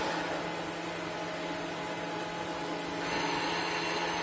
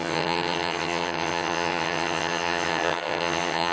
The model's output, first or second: second